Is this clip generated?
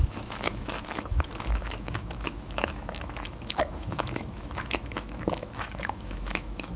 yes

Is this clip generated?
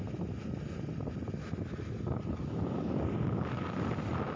no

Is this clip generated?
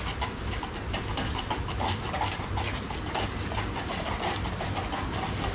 no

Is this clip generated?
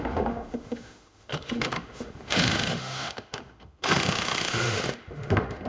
yes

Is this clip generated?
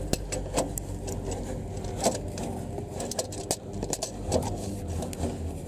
no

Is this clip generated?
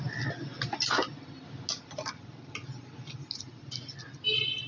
no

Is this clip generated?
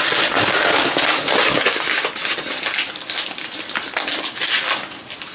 no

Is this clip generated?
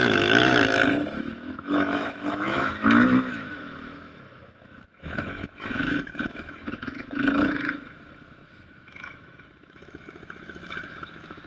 yes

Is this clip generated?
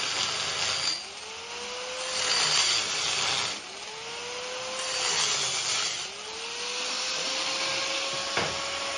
no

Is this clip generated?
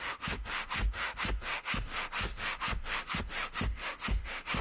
yes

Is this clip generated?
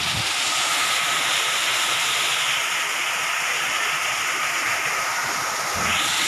no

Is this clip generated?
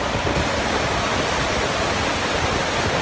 no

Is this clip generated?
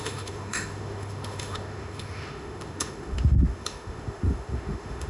yes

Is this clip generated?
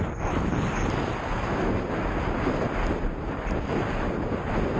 no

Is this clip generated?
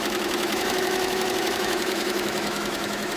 yes